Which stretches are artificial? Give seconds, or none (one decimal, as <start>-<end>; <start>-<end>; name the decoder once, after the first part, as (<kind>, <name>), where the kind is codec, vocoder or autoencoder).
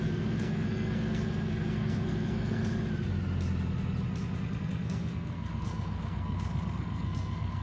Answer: 0.0-2.7 (codec, SNAC); 4.6-7.6